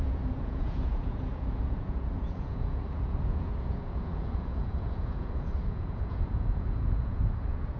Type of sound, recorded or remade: remade